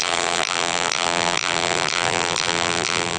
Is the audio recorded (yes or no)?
no